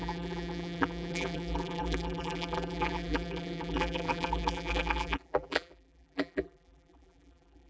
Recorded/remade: remade